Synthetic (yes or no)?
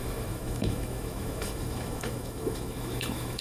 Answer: yes